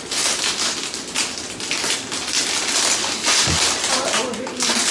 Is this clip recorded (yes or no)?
yes